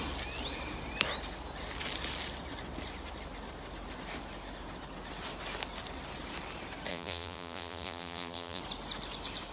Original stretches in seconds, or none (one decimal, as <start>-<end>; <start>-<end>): 0.0-6.9; 8.6-9.5